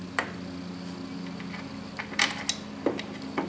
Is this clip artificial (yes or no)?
no